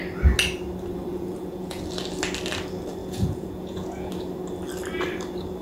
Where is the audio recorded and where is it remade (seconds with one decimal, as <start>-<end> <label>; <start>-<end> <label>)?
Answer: 0.0-1.1 recorded; 1.1-1.8 remade; 1.8-3.0 recorded; 3.0-4.1 remade; 4.1-5.6 recorded